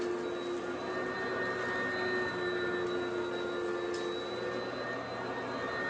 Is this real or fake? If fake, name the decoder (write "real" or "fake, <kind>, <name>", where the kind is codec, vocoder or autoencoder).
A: real